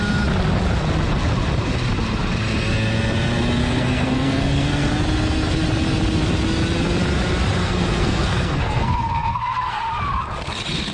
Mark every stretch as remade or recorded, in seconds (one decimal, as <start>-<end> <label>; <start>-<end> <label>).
0.0-3.6 recorded; 3.6-4.9 remade; 4.9-7.6 recorded; 7.6-9.8 remade; 9.8-10.9 recorded